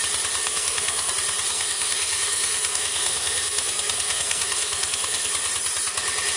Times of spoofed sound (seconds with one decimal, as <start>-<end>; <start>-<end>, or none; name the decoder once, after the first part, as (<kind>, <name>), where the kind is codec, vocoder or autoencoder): 0.4-1.1 (codec, SNAC); 1.5-5.3